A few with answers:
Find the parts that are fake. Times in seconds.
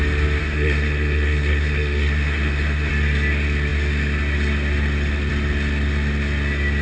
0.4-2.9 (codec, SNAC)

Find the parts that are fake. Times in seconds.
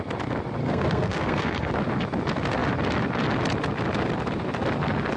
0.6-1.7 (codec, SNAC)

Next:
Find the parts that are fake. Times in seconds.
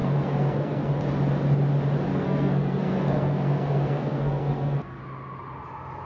0.0-0.9 (codec, SNAC); 2.1-5.0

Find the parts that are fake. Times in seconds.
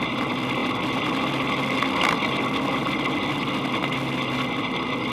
none